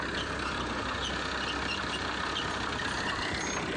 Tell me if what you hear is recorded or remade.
recorded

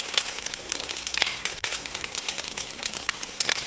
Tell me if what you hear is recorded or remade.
remade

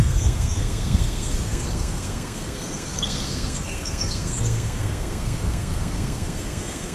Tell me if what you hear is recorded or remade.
remade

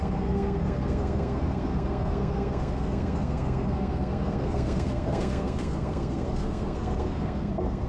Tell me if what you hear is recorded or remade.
remade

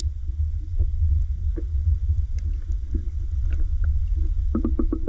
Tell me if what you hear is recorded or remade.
recorded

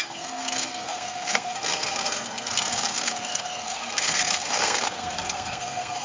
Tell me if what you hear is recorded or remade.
remade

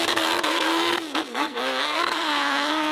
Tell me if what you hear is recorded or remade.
remade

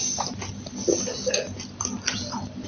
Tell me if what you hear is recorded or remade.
recorded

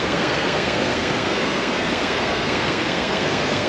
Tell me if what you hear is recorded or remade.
remade